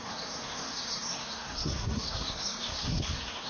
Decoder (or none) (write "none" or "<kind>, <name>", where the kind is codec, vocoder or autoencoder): codec, SNAC